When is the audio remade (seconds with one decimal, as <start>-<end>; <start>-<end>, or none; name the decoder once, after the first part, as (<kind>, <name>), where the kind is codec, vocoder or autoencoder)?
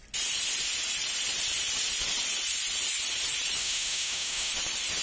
3.6-4.5 (autoencoder, DAC-VAE)